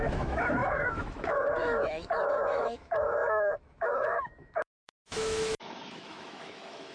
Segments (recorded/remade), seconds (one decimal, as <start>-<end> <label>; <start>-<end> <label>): 0.0-6.9 remade